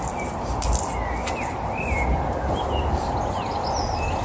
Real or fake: real